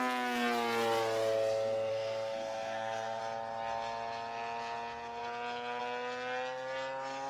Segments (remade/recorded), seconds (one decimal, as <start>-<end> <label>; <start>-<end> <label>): 0.0-1.9 recorded; 1.9-3.2 remade; 3.2-7.3 recorded